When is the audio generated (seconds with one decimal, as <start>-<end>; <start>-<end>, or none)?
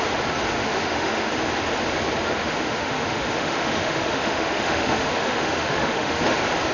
0.6-1.3; 2.4-6.2